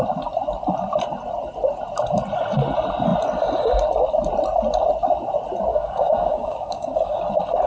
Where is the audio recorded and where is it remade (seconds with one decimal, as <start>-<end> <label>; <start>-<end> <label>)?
0.0-5.7 recorded; 5.7-7.2 remade; 7.2-7.7 recorded